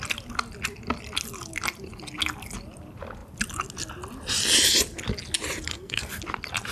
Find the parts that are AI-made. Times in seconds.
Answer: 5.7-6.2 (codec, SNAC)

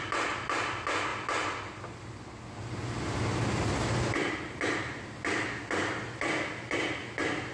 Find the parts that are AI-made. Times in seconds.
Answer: none

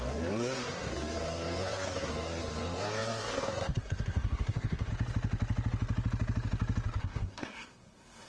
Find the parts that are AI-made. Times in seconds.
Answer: 0.0-4.9 (codec, SNAC); 7.0-8.3

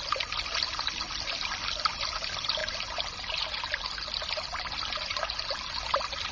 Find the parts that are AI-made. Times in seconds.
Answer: none